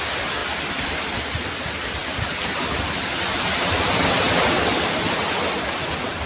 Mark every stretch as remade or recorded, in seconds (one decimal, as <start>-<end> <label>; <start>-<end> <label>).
0.0-2.0 recorded; 2.0-5.2 remade; 5.2-6.3 recorded